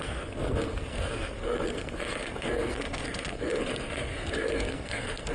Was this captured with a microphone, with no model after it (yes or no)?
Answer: no